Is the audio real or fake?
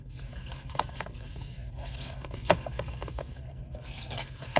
fake